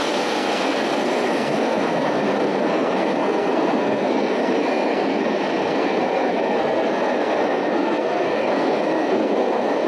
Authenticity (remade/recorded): remade